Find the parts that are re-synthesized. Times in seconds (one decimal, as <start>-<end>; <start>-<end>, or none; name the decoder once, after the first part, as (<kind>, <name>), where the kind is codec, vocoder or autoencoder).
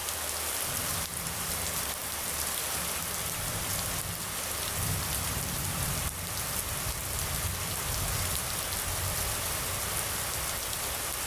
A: none